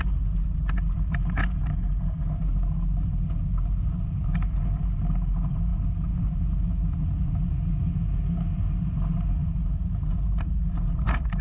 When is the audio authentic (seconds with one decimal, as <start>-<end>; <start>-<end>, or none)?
0.0-11.4